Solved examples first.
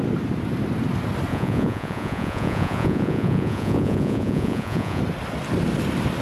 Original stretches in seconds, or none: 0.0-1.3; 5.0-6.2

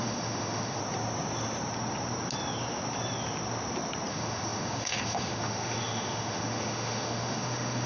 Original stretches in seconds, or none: 0.8-4.1

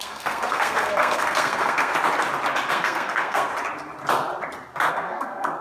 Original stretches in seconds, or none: 1.9-2.7; 3.5-4.9

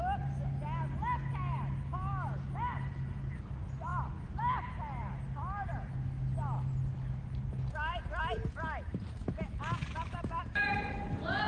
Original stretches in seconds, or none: 0.0-11.5

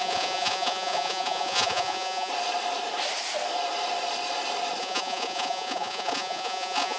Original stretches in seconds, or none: 2.3-4.8